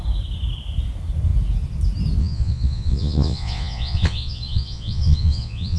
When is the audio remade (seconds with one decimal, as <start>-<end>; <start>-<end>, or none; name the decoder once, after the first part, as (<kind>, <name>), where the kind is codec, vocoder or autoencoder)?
2.2-5.8 (vocoder, Vocos)